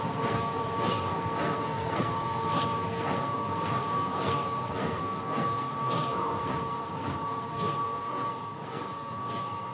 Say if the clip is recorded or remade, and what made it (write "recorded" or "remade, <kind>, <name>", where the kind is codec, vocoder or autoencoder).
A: remade, codec, SNAC